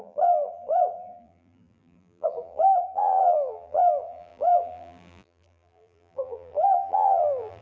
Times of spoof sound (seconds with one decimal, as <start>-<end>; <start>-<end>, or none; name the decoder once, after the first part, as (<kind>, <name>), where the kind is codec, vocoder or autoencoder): 0.0-7.6 (vocoder, BigVGAN v2)